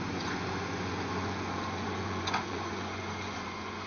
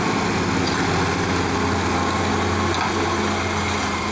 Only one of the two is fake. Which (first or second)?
first